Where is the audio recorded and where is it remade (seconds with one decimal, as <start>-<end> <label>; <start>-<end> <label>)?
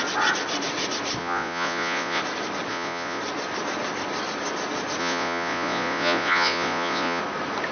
0.0-1.2 recorded; 1.2-2.2 remade; 2.2-2.7 recorded; 2.7-3.2 remade; 3.2-5.0 recorded; 5.0-7.2 remade; 7.2-7.7 recorded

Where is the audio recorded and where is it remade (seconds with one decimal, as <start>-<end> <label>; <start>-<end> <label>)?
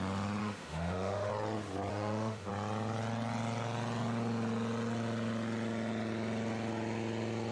0.0-0.4 recorded; 0.4-1.3 remade; 1.3-1.9 recorded; 1.9-2.5 remade; 2.5-7.5 recorded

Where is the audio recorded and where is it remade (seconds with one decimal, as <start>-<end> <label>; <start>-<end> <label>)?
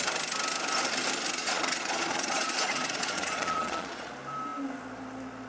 0.0-1.4 recorded; 1.4-4.1 remade; 4.1-5.5 recorded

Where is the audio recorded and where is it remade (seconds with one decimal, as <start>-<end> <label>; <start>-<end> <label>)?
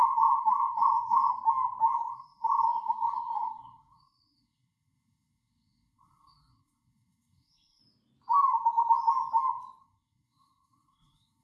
0.0-1.3 remade; 1.3-1.9 recorded; 1.9-7.8 remade; 7.8-9.8 recorded; 9.8-11.4 remade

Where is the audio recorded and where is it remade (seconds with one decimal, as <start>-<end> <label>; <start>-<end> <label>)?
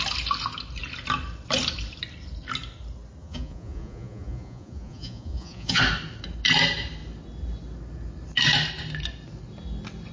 0.0-3.2 recorded; 3.2-5.8 remade; 5.8-10.1 recorded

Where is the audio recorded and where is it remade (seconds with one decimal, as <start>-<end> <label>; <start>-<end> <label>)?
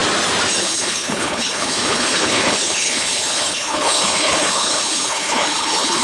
0.0-0.6 recorded; 0.6-6.0 remade